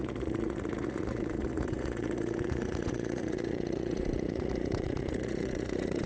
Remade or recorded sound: remade